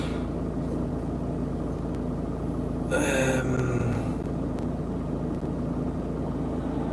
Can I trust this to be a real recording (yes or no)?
yes